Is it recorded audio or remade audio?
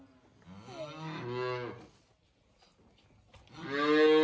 recorded